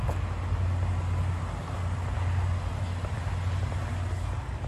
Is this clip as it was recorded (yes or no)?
yes